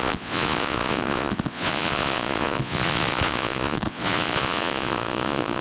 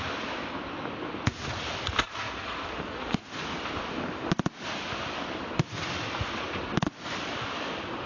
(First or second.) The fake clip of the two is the first